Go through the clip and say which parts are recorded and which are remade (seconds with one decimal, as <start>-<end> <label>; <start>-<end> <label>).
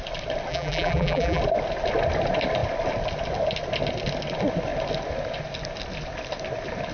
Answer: 0.0-0.5 recorded; 0.5-1.4 remade; 1.4-6.9 recorded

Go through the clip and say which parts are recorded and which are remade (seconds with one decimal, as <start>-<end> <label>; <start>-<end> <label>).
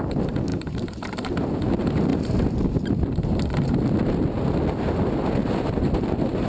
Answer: 0.0-0.5 recorded; 0.5-1.3 remade; 1.3-5.4 recorded; 5.4-6.5 remade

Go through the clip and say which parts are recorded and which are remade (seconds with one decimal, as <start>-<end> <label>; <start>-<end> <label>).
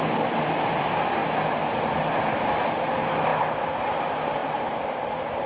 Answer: 0.0-4.4 recorded; 4.4-5.5 remade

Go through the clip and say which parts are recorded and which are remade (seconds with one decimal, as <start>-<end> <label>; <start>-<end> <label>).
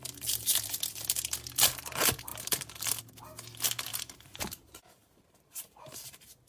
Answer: 0.0-3.9 recorded; 3.9-6.5 remade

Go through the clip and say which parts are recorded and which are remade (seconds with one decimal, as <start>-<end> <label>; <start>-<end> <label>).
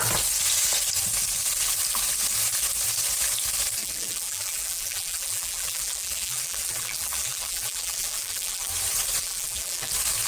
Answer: 0.0-3.8 recorded; 3.8-8.7 remade; 8.7-9.2 recorded; 9.2-9.9 remade; 9.9-10.3 recorded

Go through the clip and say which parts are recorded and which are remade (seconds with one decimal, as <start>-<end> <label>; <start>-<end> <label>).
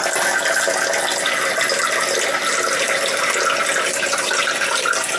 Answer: 0.0-5.2 recorded